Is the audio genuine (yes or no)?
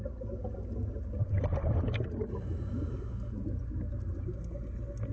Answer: yes